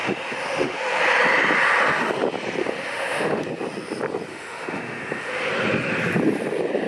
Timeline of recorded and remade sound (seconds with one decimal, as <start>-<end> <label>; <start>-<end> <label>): 0.0-1.0 remade; 1.0-2.6 recorded; 2.6-3.4 remade; 3.4-4.3 recorded; 4.3-5.5 remade; 5.5-6.9 recorded